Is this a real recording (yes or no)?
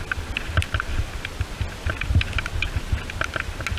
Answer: yes